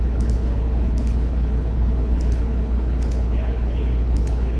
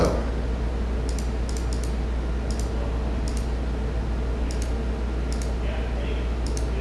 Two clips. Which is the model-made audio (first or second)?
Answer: first